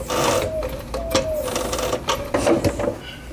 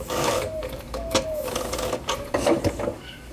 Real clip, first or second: first